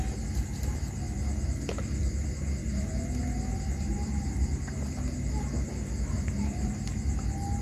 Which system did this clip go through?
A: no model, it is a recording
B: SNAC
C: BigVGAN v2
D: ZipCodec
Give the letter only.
A